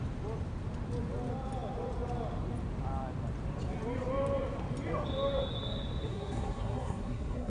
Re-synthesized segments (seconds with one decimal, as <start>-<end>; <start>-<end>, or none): 6.1-7.5

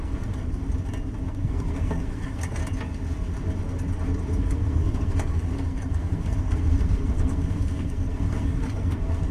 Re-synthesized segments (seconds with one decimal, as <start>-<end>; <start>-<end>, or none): 0.0-0.6; 1.3-2.6; 4.4-9.3

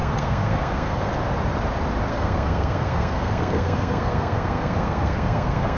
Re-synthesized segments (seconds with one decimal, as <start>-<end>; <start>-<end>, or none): 0.0-1.1; 2.1-5.8

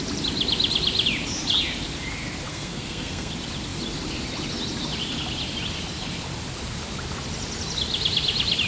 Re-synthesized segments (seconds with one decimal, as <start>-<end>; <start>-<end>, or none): 2.5-3.3

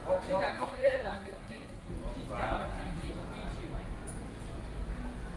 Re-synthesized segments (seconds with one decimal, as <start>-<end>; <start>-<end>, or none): 0.5-1.9; 2.4-3.1

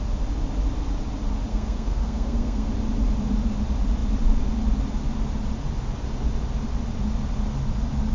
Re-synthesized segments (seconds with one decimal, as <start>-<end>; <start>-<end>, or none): 1.5-2.7

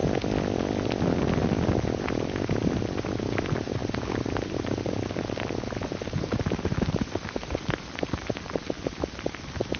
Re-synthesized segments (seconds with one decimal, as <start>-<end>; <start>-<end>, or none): none

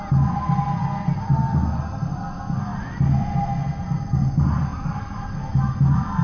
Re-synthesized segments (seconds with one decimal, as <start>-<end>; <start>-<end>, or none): none